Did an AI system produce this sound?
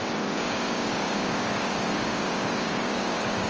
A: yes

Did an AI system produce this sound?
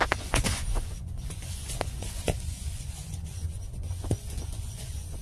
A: yes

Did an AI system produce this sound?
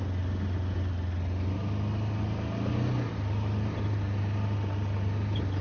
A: no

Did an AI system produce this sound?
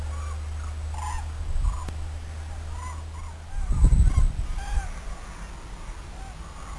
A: no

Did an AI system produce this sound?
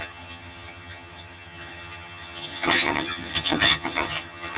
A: yes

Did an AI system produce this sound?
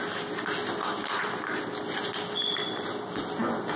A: no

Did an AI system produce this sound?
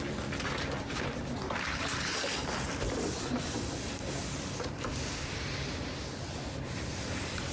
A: no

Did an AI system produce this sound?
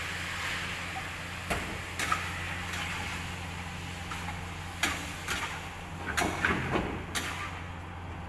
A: no